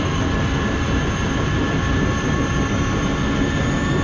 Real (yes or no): no